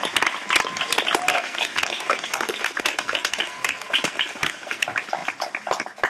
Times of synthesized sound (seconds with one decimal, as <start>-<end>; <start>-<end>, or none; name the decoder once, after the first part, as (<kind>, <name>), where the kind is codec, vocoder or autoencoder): 1.3-4.8 (codec, SNAC)